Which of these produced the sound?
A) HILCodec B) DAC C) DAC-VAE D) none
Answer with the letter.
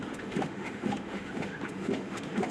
C